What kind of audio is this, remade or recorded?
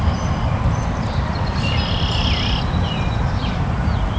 remade